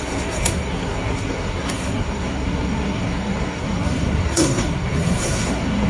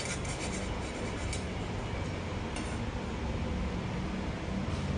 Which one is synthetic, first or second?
first